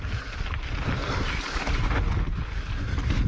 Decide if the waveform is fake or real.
real